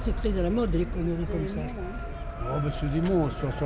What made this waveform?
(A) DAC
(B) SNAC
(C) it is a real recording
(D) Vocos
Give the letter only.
C